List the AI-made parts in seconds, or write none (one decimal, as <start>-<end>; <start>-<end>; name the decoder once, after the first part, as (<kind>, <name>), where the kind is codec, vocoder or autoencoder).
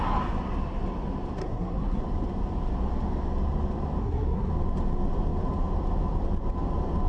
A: 1.4-2.0 (codec, SNAC); 4.0-4.5